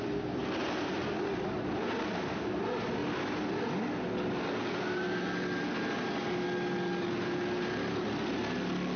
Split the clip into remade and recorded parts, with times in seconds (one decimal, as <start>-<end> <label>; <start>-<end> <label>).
0.0-9.0 recorded